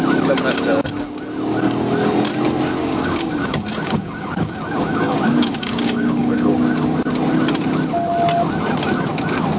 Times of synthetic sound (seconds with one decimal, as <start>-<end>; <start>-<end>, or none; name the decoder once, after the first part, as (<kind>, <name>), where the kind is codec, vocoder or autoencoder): 2.8-6.5 (codec, DAC)